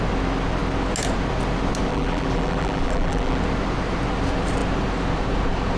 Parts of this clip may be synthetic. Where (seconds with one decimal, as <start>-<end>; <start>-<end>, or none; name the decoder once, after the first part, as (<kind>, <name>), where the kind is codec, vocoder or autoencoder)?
1.9-3.4 (vocoder, BigVGAN v2)